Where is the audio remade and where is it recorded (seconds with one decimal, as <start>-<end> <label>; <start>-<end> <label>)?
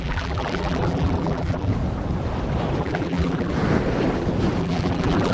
0.0-1.7 remade; 1.7-2.8 recorded; 2.8-3.5 remade; 3.5-4.6 recorded; 4.6-5.3 remade